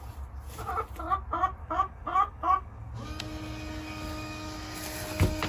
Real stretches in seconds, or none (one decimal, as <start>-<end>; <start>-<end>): 0.0-1.6; 3.2-5.5